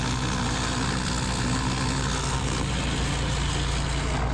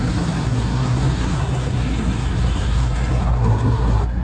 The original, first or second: first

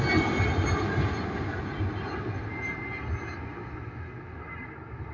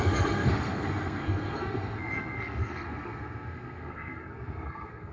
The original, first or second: first